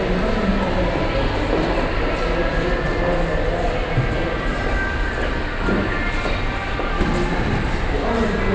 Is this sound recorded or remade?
recorded